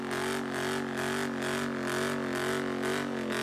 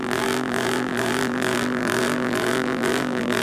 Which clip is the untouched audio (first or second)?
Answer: first